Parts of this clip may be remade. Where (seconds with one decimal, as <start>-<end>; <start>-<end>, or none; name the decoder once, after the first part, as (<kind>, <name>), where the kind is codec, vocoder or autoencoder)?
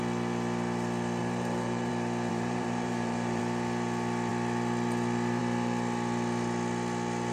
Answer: 1.2-1.9 (vocoder, BigVGAN v2); 2.3-3.4